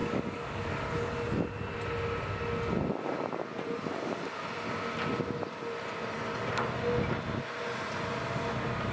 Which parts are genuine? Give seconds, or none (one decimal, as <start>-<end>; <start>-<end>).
0.7-8.9

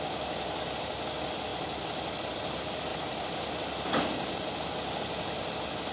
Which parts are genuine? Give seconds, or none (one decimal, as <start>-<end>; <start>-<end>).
0.0-1.5; 2.3-2.9; 4.7-5.9

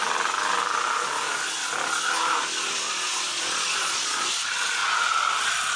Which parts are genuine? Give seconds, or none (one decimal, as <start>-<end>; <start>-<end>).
0.0-3.3; 4.3-5.8

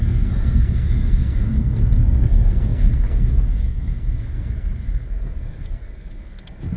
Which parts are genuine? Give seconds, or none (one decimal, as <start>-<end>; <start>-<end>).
none